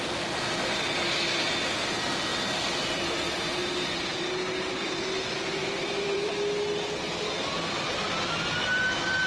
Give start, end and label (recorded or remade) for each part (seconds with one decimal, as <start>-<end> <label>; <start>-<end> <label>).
0.0-5.6 recorded; 5.6-6.3 remade; 6.3-9.3 recorded